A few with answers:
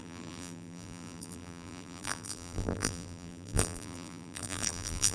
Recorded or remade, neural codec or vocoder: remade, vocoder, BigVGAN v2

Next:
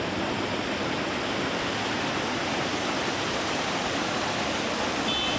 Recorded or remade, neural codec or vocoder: recorded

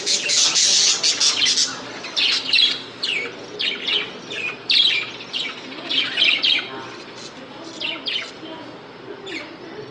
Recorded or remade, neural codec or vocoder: recorded